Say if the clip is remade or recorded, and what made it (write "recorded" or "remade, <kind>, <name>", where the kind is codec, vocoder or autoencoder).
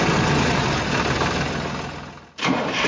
recorded